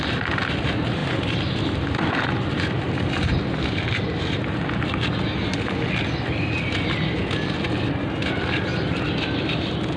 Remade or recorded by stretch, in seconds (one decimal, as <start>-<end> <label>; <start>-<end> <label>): 0.0-10.0 recorded